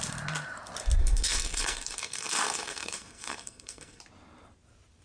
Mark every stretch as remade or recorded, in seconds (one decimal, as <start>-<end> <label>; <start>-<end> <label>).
0.0-1.0 recorded; 1.0-4.0 remade; 4.0-5.0 recorded